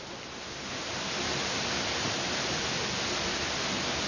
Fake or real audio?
real